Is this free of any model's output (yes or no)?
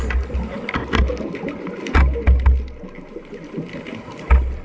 yes